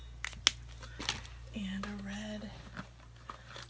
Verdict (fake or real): real